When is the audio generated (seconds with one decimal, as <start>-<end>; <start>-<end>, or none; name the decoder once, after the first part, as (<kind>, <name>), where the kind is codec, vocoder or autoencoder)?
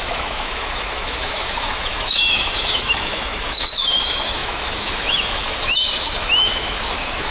0.0-7.3 (autoencoder, DAC-VAE)